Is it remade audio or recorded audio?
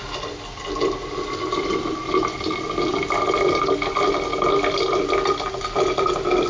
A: recorded